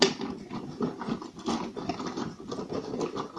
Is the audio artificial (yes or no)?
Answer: no